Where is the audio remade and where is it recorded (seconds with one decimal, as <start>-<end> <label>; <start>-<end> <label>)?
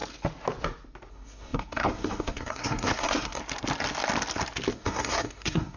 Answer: 0.0-1.1 recorded; 1.1-3.4 remade; 3.4-4.7 recorded; 4.7-5.8 remade